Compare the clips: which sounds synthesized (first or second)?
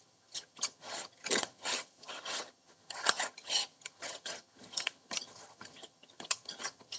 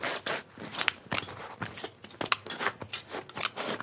first